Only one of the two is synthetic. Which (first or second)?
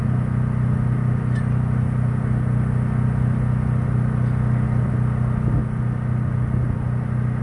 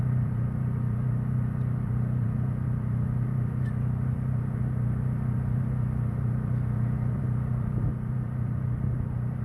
second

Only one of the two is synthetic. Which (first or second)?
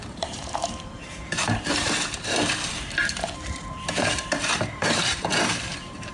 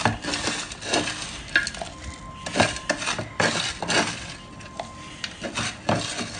first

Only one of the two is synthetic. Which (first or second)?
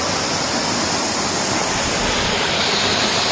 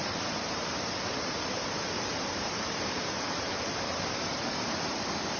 second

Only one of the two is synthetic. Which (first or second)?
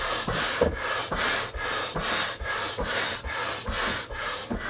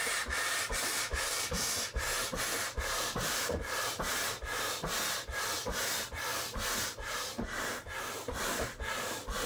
second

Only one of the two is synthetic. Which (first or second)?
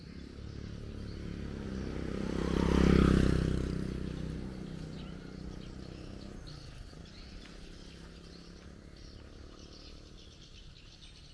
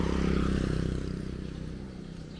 second